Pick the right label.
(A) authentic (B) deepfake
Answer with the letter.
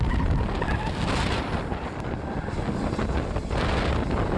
A